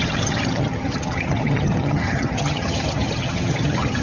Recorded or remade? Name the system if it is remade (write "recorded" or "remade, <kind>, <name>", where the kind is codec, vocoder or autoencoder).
remade, vocoder, HiFi-GAN